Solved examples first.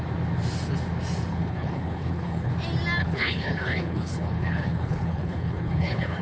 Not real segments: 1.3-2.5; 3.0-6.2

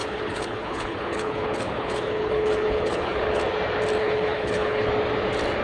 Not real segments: 0.0-3.4; 4.0-4.9

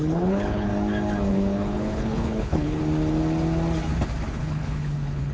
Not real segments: 0.0-0.7; 1.3-2.8; 4.3-5.3

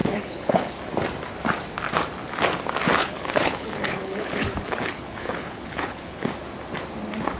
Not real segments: 0.0-0.7; 3.0-6.2

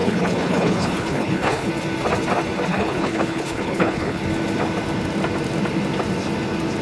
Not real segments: 0.0-1.7; 2.7-4.2

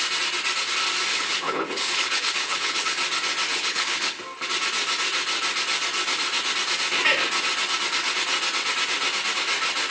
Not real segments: 1.1-2.9; 3.5-4.2

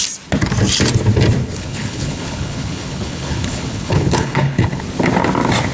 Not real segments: 1.4-4.8

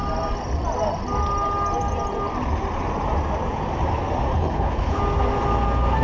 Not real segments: 4.3-5.0